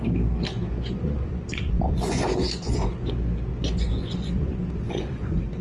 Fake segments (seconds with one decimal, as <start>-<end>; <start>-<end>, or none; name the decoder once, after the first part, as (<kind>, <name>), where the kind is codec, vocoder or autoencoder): 0.5-3.1 (vocoder, Vocos); 3.5-5.6